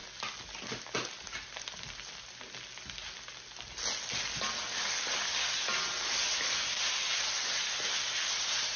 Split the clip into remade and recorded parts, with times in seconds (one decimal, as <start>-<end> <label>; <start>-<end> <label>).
0.0-8.8 recorded